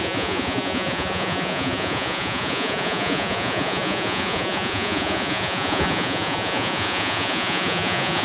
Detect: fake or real fake